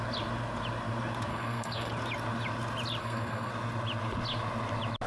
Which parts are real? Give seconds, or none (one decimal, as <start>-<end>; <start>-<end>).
0.0-1.3; 1.9-3.0; 3.5-5.1